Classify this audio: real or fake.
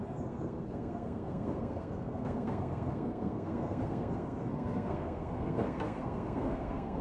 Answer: fake